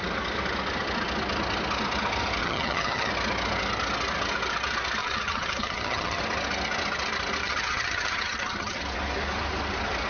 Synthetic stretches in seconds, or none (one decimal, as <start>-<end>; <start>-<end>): 2.4-3.1; 5.0-6.2; 7.4-8.8